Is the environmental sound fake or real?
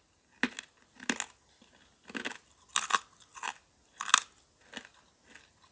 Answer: real